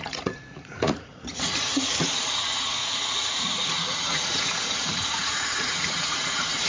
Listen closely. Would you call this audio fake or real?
fake